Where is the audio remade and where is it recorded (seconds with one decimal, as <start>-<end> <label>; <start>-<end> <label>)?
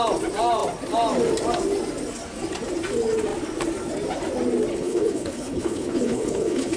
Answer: 0.0-4.7 recorded; 4.7-6.8 remade